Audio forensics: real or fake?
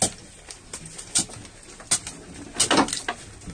real